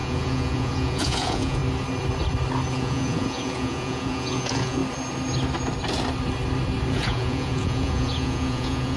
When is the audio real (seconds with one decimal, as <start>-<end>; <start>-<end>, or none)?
1.6-2.7; 4.8-6.9